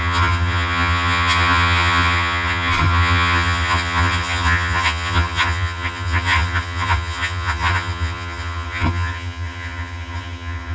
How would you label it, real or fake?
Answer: fake